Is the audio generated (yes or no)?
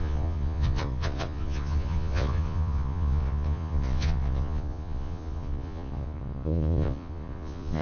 yes